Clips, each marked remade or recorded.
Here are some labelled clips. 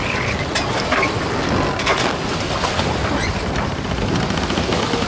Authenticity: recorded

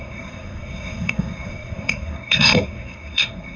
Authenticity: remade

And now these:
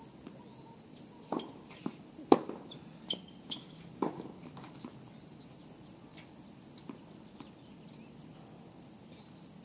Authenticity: recorded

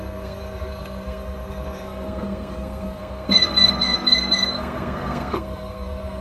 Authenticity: remade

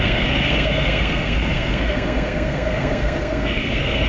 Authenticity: remade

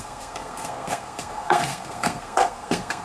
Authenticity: remade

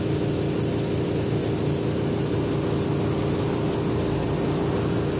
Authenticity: recorded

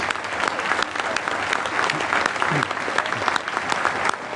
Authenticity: recorded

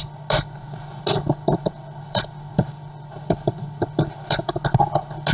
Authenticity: recorded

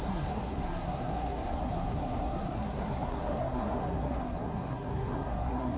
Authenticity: remade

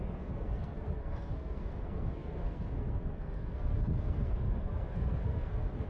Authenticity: remade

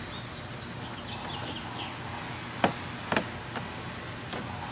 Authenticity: recorded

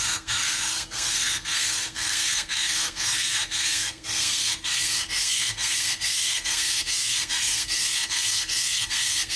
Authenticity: remade